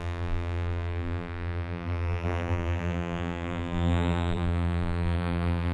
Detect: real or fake fake